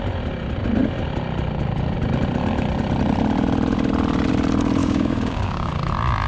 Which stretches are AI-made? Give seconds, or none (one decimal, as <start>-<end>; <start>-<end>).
4.8-5.7